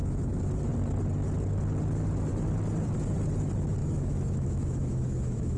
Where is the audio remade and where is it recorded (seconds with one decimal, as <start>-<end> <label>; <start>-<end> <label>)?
0.0-3.8 recorded; 3.8-5.6 remade